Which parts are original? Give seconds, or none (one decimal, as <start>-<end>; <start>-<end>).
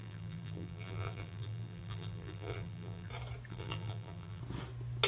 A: 3.1-3.5; 4.4-5.1